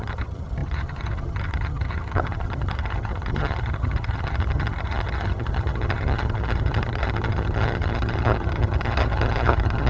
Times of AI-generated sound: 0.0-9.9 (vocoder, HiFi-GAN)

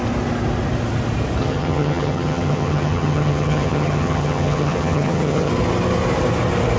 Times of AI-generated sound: 1.4-5.5 (vocoder, HiFi-GAN)

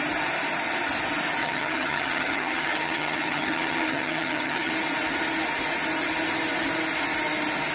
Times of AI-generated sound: 1.4-4.7 (vocoder, HiFi-GAN)

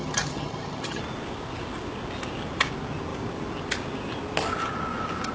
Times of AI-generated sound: 0.0-1.0 (vocoder, HiFi-GAN)